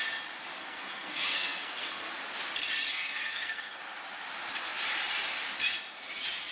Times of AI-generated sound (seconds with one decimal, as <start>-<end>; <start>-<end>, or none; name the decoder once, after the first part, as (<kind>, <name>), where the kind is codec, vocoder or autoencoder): 0.6-2.1 (codec, SNAC); 2.9-3.8